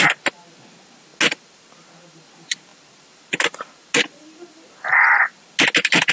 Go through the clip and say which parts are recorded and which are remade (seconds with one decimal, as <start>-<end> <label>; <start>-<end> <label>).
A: 0.0-6.1 recorded